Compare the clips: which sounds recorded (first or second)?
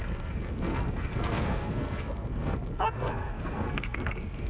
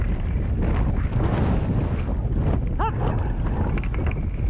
second